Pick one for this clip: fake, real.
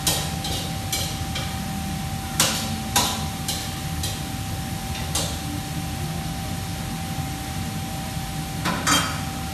real